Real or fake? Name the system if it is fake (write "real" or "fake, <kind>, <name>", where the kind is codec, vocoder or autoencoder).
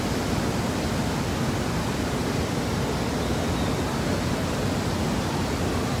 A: real